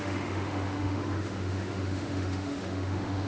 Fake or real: fake